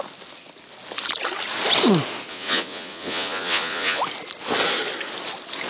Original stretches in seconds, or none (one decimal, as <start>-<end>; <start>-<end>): 0.0-2.3; 4.0-5.7